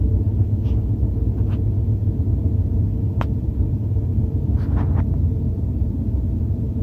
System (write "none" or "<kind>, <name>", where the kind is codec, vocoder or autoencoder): none